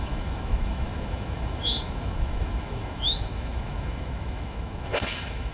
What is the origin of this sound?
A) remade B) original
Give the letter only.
A